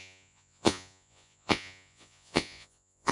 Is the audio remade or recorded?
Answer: remade